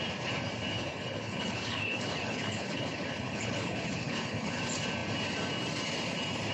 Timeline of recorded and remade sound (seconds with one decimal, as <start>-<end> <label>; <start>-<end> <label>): 0.0-0.7 recorded; 0.7-4.6 remade; 4.6-6.5 recorded